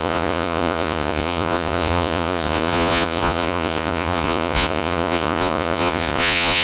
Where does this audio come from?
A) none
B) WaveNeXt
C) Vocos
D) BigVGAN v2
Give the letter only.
C